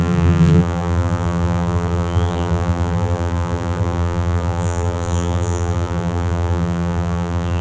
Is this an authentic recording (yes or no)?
no